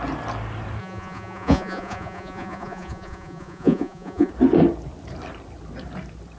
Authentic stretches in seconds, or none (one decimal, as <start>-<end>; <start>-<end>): 0.0-0.8; 4.3-6.4